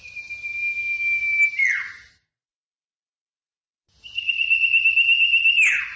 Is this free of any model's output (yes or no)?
yes